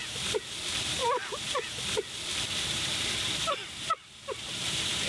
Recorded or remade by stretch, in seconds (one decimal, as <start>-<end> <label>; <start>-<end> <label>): 0.0-5.1 recorded